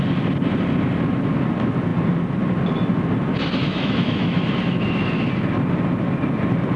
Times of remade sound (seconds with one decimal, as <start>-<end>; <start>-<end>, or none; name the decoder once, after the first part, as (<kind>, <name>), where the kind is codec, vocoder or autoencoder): 3.6-4.5 (autoencoder, DAC-VAE)